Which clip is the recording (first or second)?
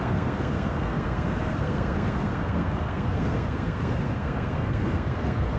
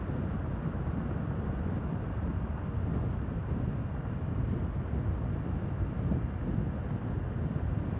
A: second